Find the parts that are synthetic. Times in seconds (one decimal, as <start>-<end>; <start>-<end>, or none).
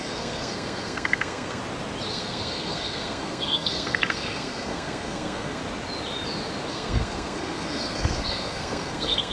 0.0-1.6; 2.1-5.6; 6.7-9.3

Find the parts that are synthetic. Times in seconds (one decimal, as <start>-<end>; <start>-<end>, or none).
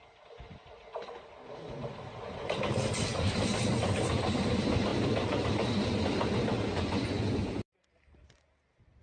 6.7-7.4